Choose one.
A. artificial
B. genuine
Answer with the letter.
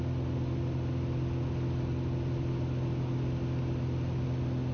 B